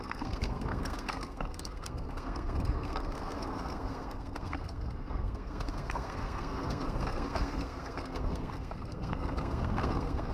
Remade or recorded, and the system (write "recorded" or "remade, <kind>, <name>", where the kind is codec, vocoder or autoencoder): remade, codec, SNAC